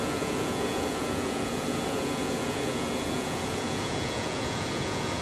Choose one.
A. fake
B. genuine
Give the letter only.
A